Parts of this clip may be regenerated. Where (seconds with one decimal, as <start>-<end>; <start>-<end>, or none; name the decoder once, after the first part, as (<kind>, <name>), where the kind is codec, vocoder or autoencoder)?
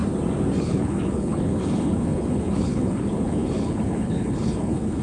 0.6-5.0 (codec, HILCodec)